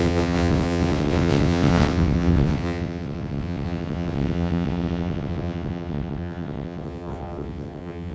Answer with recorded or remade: remade